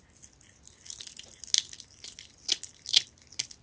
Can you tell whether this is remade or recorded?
recorded